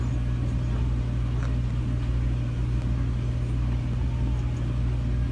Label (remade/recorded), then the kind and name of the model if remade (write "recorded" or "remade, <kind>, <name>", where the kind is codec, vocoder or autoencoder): recorded